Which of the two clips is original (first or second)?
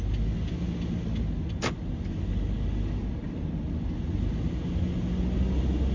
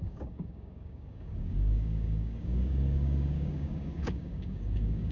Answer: first